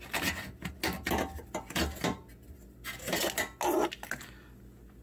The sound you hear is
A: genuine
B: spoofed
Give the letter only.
A